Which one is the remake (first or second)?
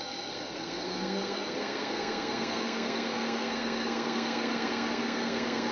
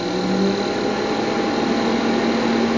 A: first